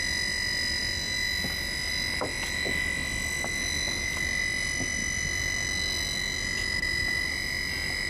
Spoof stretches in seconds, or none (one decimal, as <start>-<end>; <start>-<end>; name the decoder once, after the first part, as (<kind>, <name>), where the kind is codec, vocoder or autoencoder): none